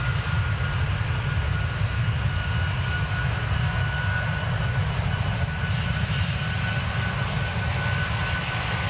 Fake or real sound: real